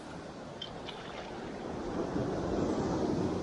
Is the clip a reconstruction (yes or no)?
no